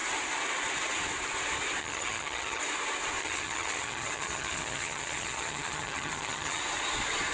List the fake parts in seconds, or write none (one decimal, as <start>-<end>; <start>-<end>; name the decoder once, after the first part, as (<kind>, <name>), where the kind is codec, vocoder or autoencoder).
1.8-2.6 (vocoder, HiFi-GAN); 3.2-6.6